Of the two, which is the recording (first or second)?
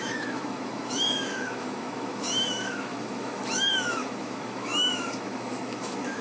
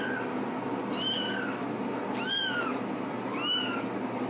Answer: second